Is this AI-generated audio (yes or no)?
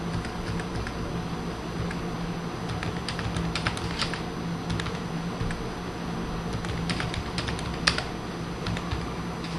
no